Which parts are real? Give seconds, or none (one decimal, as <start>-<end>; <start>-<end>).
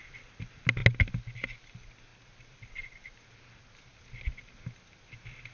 0.0-5.5